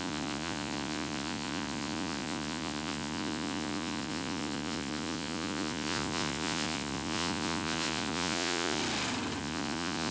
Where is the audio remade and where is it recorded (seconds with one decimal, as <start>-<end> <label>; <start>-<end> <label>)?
0.0-8.8 remade; 8.8-9.4 recorded; 9.4-10.1 remade